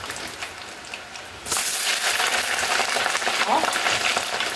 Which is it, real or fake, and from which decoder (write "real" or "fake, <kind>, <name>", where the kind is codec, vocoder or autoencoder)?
real